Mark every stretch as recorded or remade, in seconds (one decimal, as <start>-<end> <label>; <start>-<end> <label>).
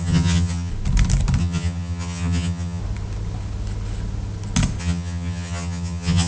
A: 0.0-0.7 remade; 0.7-1.4 recorded; 1.4-2.8 remade; 2.8-4.8 recorded; 4.8-6.3 remade